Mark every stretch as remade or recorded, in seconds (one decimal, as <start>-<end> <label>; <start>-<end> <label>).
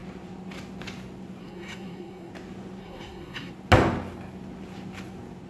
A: 0.0-1.4 recorded; 1.4-2.3 remade; 2.3-2.8 recorded; 2.8-3.5 remade; 3.5-5.5 recorded